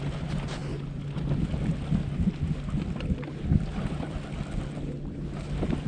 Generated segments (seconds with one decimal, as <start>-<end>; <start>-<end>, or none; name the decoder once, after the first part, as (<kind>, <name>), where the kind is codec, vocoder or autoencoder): none